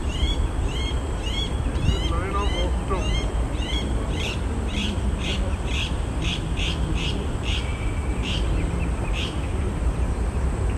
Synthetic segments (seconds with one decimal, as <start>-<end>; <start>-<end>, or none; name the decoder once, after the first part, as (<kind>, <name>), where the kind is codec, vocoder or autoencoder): 3.3-10.8 (vocoder, BigVGAN v2)